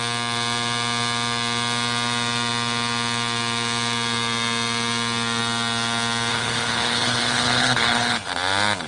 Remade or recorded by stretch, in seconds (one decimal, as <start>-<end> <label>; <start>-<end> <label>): 0.0-6.3 recorded; 6.3-8.3 remade; 8.3-8.9 recorded